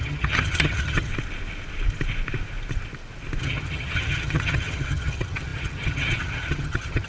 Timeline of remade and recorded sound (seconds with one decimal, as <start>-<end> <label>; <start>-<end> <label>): 0.0-1.1 remade; 1.1-3.4 recorded; 3.4-7.1 remade